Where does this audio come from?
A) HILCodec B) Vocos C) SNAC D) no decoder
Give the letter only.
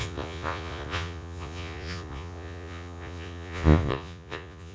B